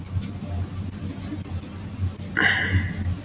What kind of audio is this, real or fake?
real